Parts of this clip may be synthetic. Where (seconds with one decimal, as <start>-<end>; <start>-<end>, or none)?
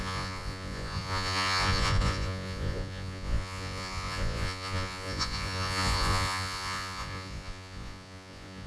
0.0-8.7